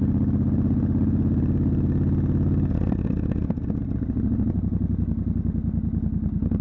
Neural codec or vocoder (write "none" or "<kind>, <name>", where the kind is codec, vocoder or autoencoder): none